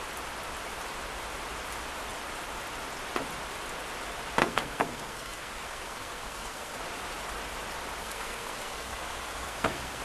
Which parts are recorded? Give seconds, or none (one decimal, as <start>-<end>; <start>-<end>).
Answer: 0.0-4.4; 6.8-8.0